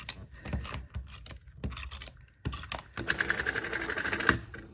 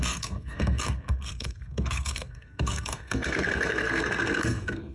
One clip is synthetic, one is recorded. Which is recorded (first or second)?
first